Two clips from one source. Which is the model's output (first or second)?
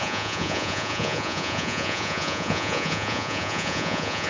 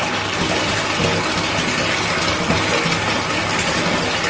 first